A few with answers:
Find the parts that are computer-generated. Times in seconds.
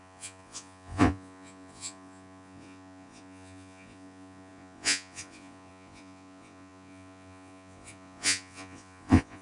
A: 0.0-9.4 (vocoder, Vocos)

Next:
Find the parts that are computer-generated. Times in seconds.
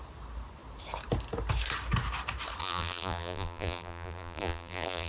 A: 2.6-5.1 (vocoder, BigVGAN v2)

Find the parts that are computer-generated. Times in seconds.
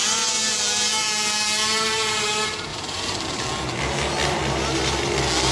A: 2.7-3.5 (vocoder, BigVGAN v2)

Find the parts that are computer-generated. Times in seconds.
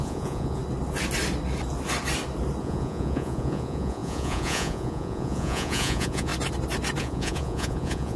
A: 0.0-0.6 (vocoder, Vocos); 2.6-6.3; 7.0-8.2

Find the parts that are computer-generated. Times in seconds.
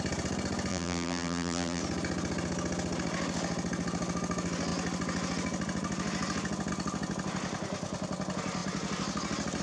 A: 0.7-1.8 (vocoder, BigVGAN v2)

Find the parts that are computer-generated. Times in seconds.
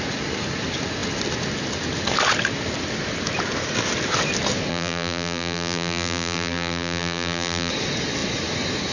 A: 4.7-7.7 (vocoder, BigVGAN v2)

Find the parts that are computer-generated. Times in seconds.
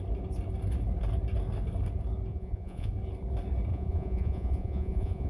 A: 2.3-2.9 (vocoder, Vocos); 3.7-5.3